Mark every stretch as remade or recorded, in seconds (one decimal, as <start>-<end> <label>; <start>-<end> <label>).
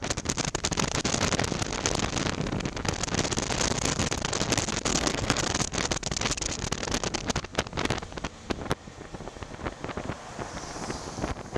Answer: 0.0-4.9 recorded; 4.9-5.4 remade; 5.4-11.6 recorded